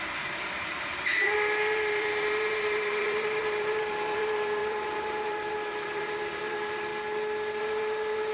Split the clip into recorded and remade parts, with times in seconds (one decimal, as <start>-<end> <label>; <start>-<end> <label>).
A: 0.0-6.9 remade; 6.9-7.6 recorded; 7.6-8.3 remade